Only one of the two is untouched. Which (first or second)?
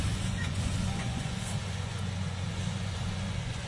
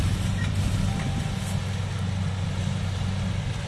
second